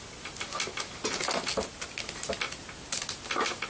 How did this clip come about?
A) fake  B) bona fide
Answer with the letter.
B